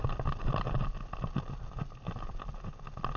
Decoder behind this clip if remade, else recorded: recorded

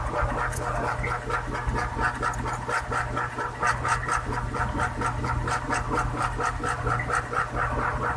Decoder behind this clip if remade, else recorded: recorded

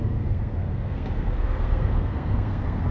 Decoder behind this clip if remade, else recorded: remade, codec, SNAC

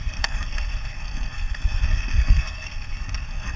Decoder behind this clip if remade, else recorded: remade, codec, SNAC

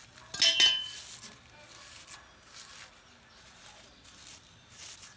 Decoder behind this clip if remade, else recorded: recorded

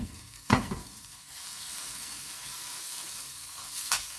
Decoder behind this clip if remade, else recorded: remade, codec, SNAC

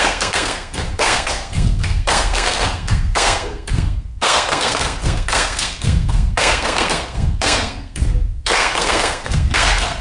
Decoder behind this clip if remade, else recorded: remade, codec, SNAC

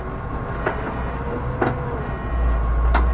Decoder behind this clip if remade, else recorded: recorded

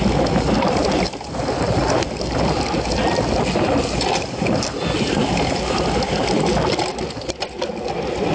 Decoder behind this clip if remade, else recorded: recorded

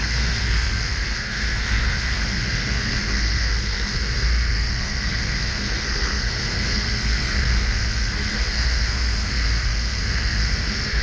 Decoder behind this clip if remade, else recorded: remade, codec, SNAC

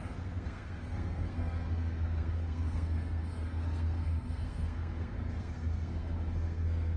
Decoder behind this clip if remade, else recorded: remade, codec, SNAC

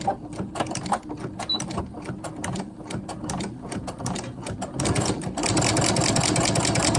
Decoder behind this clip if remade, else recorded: recorded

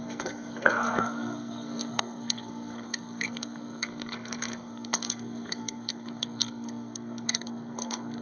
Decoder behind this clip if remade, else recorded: remade, codec, SNAC